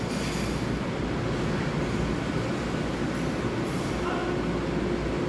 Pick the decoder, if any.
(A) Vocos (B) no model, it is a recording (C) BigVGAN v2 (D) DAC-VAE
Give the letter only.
B